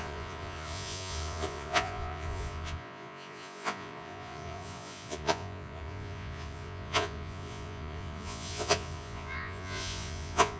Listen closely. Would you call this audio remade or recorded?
remade